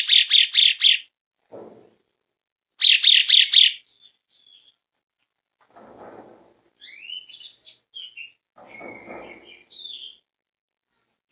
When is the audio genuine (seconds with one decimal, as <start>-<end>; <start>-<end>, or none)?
0.0-11.3